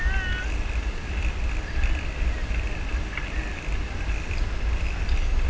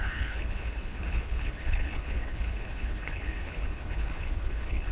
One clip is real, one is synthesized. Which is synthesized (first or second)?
second